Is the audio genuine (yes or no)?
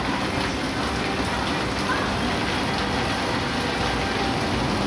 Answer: yes